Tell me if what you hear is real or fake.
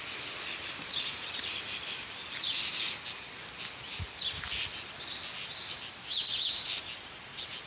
real